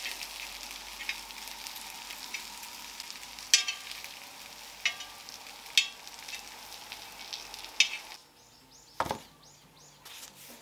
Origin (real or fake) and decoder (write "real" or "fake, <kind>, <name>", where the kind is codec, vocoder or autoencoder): real